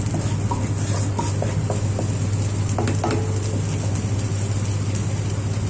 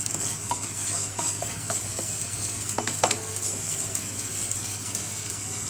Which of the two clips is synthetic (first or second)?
second